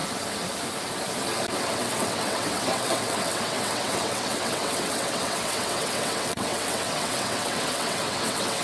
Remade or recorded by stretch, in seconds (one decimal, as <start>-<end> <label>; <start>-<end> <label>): 0.0-1.6 recorded; 1.6-8.6 remade